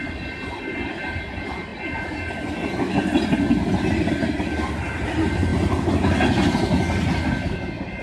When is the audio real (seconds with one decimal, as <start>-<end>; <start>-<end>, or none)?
0.0-8.0